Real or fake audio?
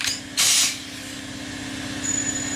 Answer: real